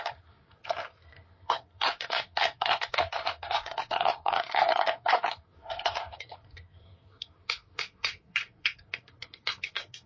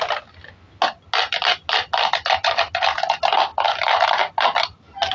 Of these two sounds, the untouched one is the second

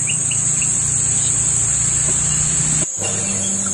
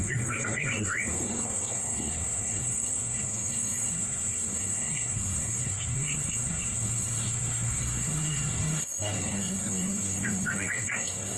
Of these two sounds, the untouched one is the first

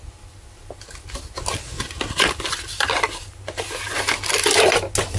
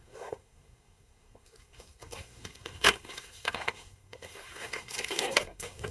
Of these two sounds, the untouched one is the first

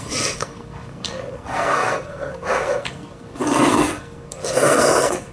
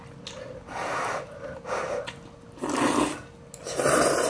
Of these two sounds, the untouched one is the second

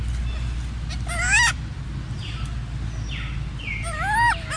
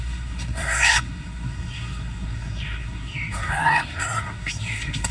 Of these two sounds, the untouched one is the first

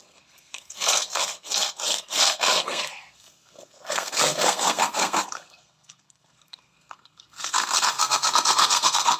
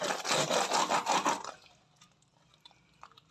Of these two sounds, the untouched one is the second